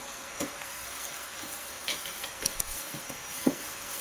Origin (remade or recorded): remade